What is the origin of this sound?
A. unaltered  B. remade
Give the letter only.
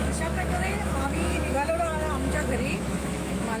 B